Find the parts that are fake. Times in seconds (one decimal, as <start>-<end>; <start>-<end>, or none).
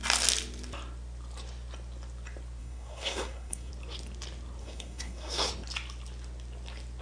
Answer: 2.6-3.7; 4.6-5.5